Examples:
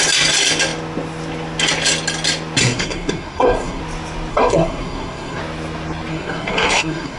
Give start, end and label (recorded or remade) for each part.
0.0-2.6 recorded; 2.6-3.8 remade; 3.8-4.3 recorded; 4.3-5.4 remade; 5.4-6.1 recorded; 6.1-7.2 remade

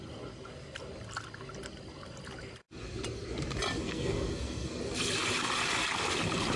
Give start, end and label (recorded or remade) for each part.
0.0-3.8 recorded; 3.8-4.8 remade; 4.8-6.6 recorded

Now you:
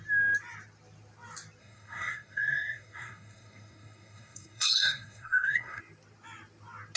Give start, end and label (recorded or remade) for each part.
0.0-1.6 recorded; 1.6-5.8 remade; 5.8-7.0 recorded

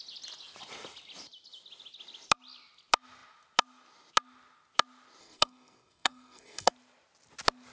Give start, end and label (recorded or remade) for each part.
0.0-5.2 recorded; 5.2-6.7 remade; 6.7-7.7 recorded